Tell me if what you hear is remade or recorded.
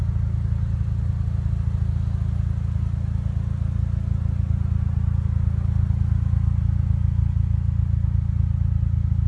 recorded